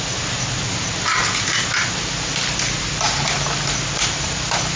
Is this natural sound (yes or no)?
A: yes